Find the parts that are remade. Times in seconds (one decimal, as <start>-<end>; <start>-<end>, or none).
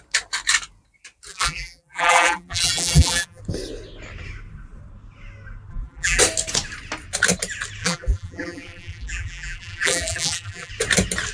1.3-3.4; 5.7-6.2; 7.8-10.7